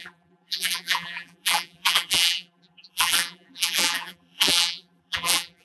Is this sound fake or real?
fake